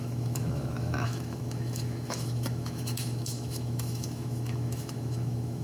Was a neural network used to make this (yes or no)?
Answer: yes